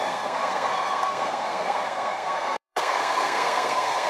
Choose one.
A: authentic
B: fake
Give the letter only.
B